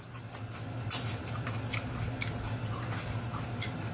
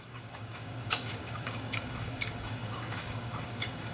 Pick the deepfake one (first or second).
second